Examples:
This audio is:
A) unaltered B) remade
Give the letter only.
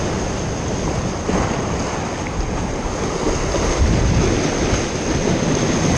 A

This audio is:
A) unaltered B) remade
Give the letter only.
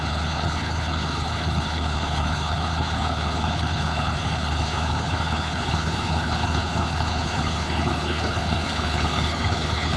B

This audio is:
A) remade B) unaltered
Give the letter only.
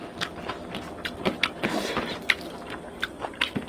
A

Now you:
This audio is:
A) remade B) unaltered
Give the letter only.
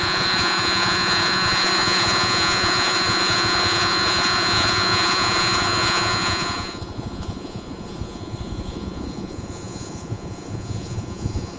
A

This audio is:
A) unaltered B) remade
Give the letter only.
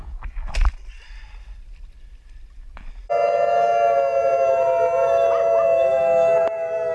A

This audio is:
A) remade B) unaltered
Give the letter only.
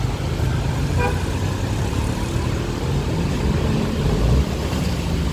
B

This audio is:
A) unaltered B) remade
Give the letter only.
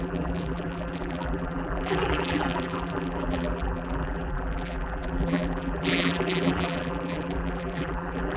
B